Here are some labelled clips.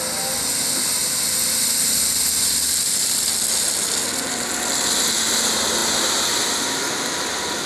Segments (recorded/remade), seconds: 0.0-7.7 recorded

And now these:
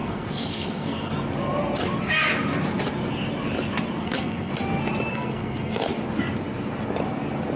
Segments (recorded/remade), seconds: 0.0-1.1 remade; 1.1-4.0 recorded; 4.0-4.5 remade; 4.5-5.1 recorded; 5.1-5.9 remade; 5.9-7.6 recorded

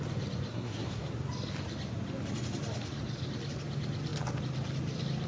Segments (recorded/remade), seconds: 0.0-0.5 recorded; 0.5-1.1 remade; 1.1-5.3 recorded

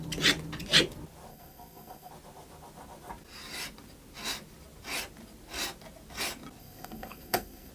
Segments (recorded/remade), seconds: 0.0-1.3 recorded; 1.3-2.1 remade; 2.1-6.6 recorded; 6.6-7.7 remade